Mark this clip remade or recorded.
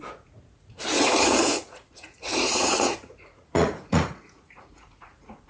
remade